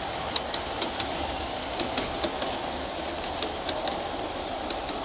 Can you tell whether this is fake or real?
real